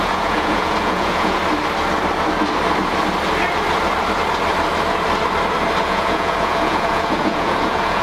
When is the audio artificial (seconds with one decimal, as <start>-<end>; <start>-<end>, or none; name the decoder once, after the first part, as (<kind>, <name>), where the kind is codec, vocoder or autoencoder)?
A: 0.0-1.4 (vocoder, Vocos); 5.8-8.0